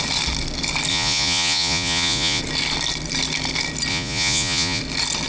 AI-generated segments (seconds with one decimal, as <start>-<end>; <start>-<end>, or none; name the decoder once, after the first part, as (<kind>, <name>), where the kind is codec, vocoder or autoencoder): 0.9-2.4 (vocoder, Vocos); 3.9-4.8